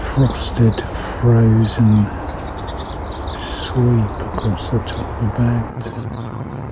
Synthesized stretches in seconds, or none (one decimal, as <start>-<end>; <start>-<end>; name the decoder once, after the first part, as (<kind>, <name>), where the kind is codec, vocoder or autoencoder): 5.7-6.7 (vocoder, HiFi-GAN)